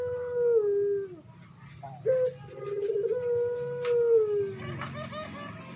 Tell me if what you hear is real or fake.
real